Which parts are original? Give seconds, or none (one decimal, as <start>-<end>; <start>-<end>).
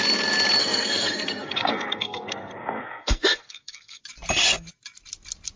0.0-0.6; 4.0-5.6